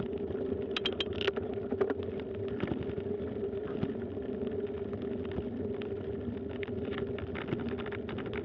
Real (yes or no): yes